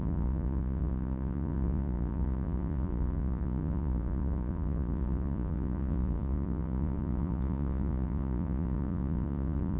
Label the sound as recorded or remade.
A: remade